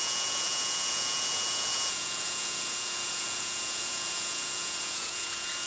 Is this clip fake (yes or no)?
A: yes